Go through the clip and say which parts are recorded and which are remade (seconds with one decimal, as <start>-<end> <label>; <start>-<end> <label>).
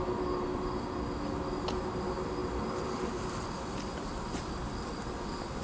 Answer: 0.0-5.6 recorded